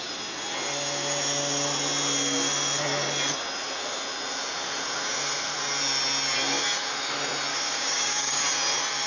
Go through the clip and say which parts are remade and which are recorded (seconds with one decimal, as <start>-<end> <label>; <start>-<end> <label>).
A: 0.0-7.5 recorded; 7.5-8.4 remade; 8.4-9.1 recorded